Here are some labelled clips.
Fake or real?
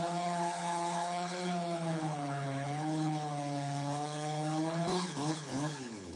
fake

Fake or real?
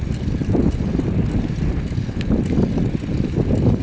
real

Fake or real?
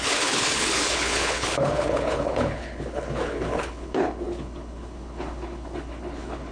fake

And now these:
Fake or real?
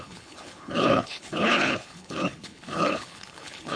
fake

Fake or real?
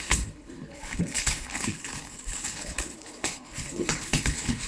fake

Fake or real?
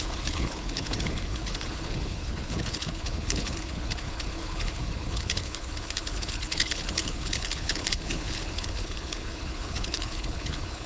fake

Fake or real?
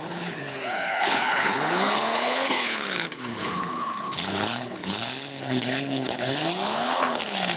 fake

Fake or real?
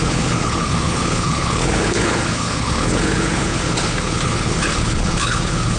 fake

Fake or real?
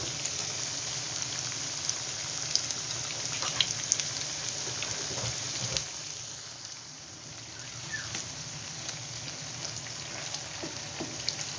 real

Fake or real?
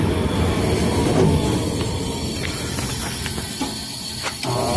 real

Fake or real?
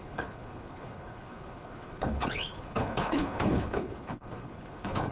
fake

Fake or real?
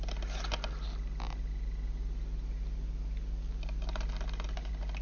real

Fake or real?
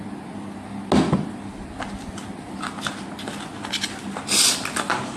real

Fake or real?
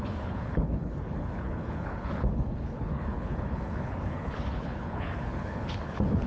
fake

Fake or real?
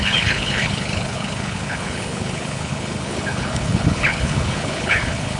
fake